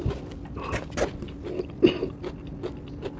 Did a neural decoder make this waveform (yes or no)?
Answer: no